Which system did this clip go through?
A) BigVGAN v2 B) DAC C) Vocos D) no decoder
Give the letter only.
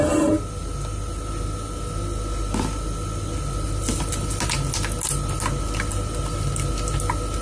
D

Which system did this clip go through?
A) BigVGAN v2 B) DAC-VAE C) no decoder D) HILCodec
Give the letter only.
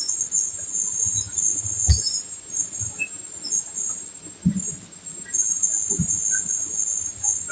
C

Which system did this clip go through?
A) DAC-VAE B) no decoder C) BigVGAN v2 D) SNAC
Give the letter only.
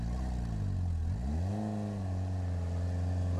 B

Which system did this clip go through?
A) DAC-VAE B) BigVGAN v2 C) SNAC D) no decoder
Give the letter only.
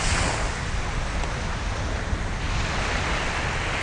D